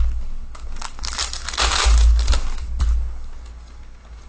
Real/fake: real